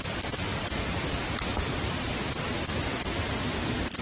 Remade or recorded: recorded